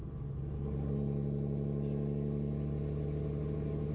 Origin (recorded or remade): recorded